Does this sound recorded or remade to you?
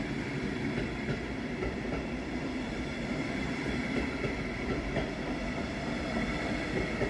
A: remade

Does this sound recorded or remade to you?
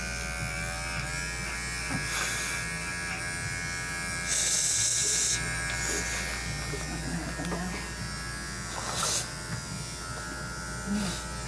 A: recorded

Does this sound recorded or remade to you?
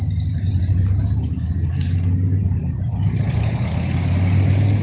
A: recorded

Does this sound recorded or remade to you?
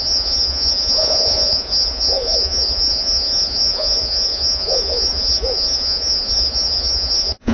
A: remade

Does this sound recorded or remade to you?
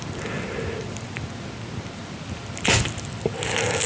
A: recorded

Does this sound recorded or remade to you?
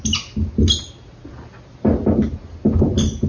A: recorded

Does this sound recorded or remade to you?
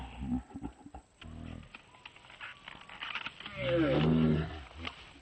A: recorded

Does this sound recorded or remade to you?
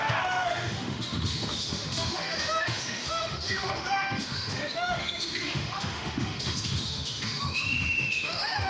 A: remade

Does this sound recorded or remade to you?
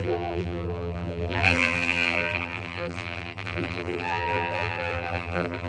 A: remade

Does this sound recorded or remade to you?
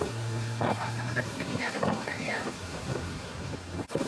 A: remade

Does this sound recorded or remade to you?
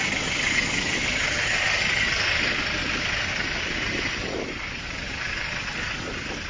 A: remade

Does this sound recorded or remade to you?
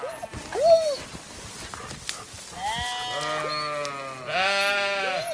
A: recorded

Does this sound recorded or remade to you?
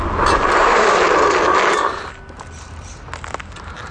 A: recorded